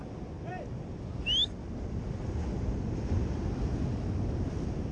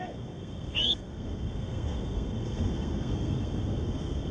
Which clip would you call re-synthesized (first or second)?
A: second